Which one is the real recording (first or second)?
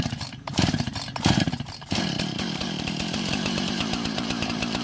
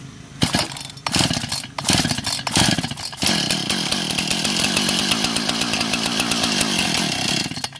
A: second